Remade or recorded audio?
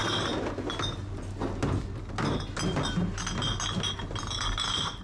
recorded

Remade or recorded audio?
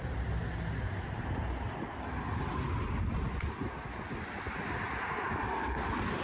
recorded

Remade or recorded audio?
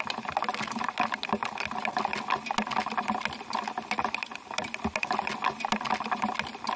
recorded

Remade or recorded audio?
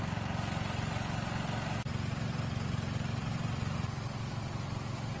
recorded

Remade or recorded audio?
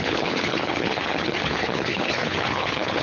remade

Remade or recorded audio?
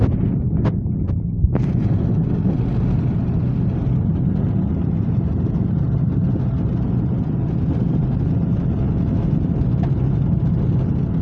recorded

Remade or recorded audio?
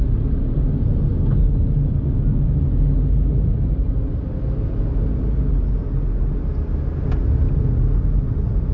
recorded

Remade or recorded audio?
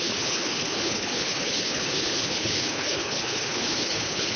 remade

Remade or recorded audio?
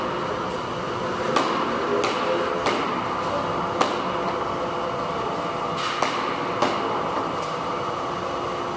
recorded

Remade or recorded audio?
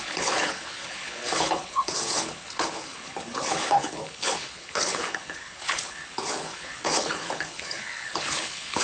remade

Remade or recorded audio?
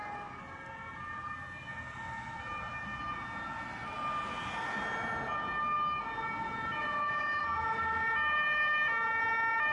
recorded